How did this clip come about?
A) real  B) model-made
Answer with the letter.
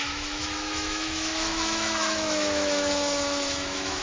B